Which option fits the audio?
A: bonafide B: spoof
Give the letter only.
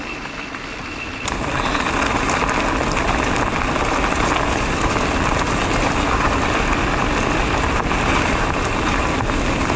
A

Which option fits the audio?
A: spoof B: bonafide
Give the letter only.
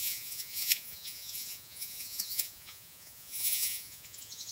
A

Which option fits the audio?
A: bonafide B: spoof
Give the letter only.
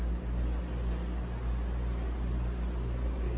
A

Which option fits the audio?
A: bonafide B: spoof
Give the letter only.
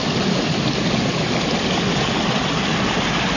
B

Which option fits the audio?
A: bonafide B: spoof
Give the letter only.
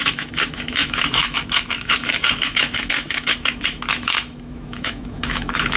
B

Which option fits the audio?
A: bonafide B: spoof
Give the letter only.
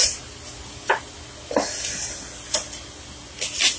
A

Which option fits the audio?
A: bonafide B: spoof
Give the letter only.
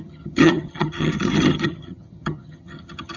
B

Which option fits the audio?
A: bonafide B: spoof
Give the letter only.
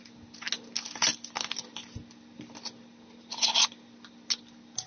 A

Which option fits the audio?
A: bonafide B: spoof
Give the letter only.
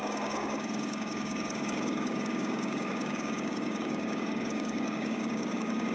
B